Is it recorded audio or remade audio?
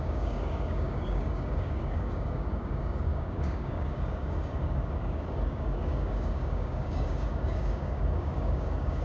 remade